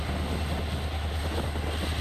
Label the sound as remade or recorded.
recorded